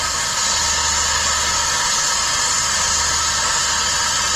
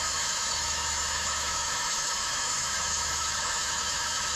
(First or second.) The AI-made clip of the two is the second